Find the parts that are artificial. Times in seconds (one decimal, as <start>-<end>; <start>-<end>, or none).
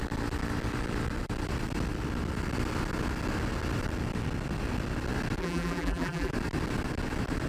5.4-6.3